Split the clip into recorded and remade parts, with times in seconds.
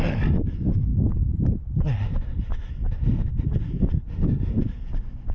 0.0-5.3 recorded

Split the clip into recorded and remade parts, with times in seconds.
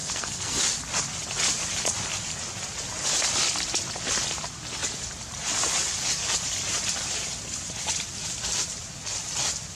0.0-0.6 remade; 0.6-9.7 recorded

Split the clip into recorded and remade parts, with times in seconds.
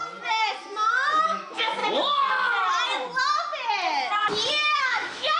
0.0-1.2 recorded; 1.2-1.8 remade; 1.8-4.8 recorded; 4.8-5.4 remade